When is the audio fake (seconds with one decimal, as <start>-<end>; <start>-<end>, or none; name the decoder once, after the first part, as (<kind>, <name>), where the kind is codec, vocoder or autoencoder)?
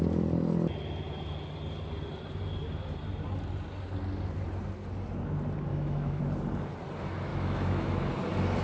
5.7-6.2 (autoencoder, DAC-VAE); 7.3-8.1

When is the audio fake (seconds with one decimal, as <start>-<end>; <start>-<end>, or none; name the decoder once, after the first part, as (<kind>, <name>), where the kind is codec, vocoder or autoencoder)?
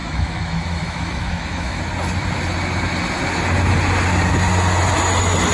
0.0-1.8 (autoencoder, DAC-VAE)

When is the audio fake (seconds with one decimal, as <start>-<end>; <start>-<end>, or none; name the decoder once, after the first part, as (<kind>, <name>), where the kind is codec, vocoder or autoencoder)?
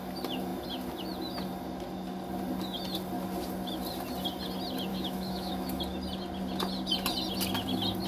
4.9-5.8 (autoencoder, DAC-VAE)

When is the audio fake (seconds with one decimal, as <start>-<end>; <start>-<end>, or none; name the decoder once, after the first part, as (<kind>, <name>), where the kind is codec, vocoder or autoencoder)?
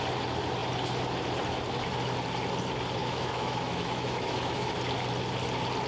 3.0-4.7 (autoencoder, DAC-VAE)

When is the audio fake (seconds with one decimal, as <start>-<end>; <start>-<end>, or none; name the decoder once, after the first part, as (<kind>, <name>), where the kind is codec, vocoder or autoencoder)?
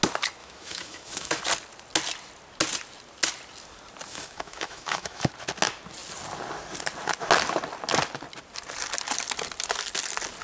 0.4-1.4 (autoencoder, DAC-VAE); 4.1-5.3